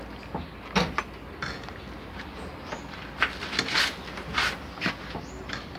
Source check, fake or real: real